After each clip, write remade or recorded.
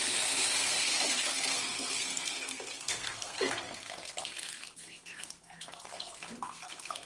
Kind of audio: remade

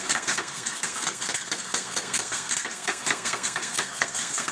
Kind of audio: remade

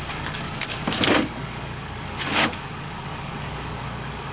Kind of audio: remade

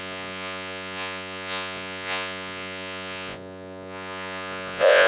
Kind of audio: remade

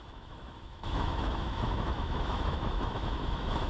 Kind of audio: remade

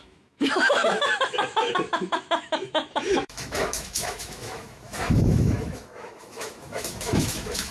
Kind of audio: remade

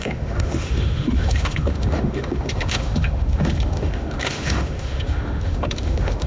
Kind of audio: remade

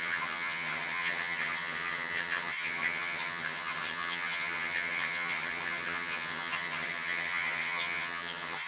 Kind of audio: remade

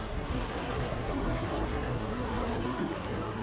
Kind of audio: remade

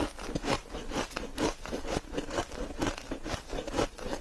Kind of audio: recorded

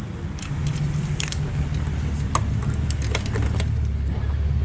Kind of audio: recorded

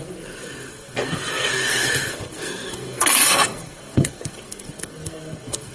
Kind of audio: remade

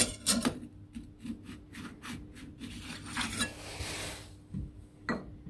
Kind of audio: recorded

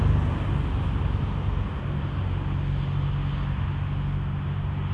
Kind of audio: recorded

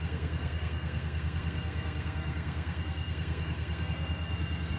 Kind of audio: remade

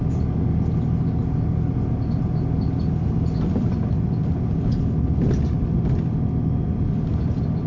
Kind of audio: recorded